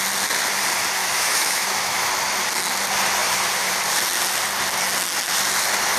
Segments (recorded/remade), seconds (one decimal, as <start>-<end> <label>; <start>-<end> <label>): 0.0-1.0 recorded; 1.0-2.1 remade; 2.1-6.0 recorded